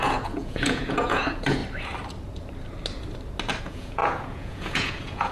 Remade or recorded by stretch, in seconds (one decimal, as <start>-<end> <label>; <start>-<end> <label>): 0.0-1.6 remade; 1.6-3.6 recorded; 3.6-5.3 remade